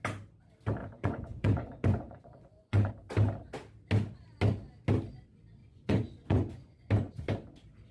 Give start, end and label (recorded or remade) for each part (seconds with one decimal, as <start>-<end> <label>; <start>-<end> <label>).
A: 0.0-0.8 recorded; 0.8-2.9 remade; 2.9-5.6 recorded; 5.6-6.9 remade; 6.9-7.9 recorded